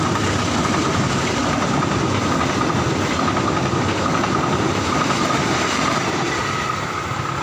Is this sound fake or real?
fake